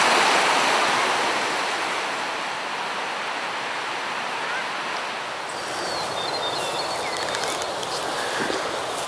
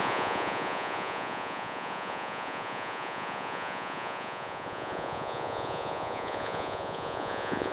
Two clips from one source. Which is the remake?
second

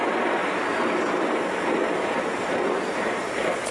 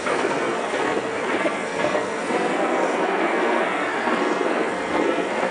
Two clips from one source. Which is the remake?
second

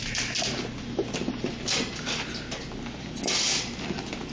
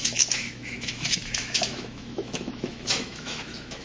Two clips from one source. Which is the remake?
second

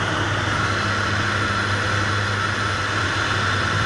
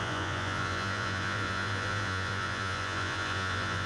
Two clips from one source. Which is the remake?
second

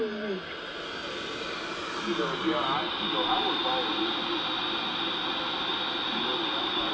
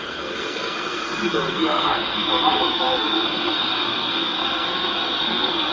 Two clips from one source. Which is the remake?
second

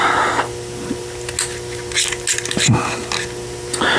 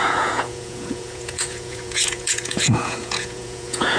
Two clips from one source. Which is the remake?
second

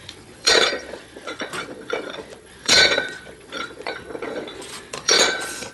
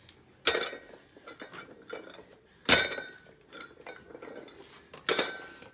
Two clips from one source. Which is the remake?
first